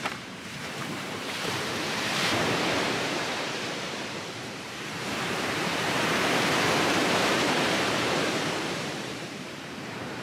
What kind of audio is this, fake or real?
fake